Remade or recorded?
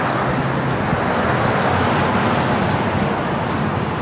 recorded